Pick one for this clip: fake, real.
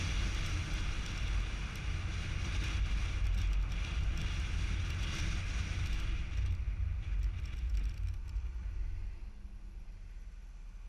real